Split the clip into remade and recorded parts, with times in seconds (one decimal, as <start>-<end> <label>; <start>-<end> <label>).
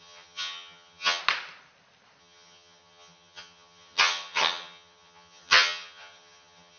0.0-1.2 remade; 1.2-2.2 recorded; 2.2-6.8 remade